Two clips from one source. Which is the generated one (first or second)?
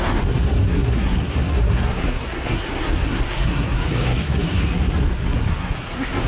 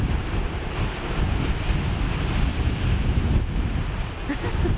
first